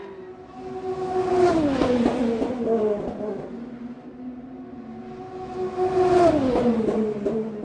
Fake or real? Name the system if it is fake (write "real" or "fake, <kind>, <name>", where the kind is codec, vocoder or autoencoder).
real